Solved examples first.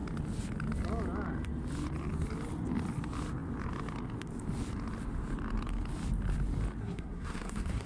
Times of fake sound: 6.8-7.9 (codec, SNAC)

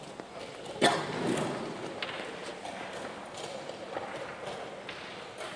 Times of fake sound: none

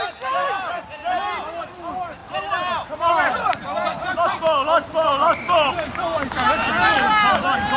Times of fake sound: none

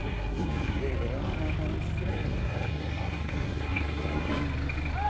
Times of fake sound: 0.0-0.8 (codec, SNAC); 2.1-4.3

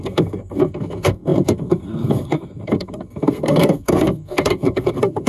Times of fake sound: 0.0-5.3 (codec, SNAC)